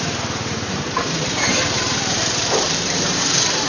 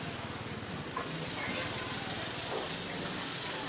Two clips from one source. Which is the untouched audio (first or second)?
second